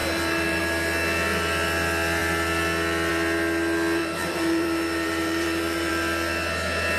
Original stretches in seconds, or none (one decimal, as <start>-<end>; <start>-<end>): 0.6-4.0; 5.9-7.0